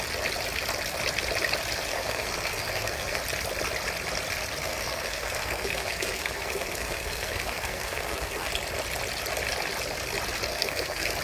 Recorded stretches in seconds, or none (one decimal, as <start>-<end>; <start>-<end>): 0.0-1.9; 3.2-4.6; 8.5-10.5